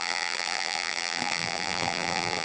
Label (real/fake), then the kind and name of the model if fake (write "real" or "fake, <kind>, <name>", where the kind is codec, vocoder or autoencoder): fake, vocoder, BigVGAN v2